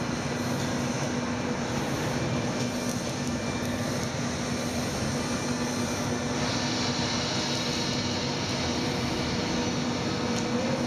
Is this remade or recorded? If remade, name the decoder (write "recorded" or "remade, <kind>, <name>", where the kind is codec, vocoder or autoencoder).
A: recorded